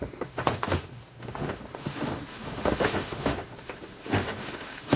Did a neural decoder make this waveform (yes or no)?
yes